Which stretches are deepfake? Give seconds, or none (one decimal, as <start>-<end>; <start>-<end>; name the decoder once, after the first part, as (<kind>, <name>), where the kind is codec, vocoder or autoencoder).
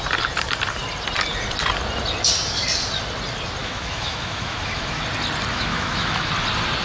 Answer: 3.6-5.0 (autoencoder, DAC-VAE); 5.5-6.3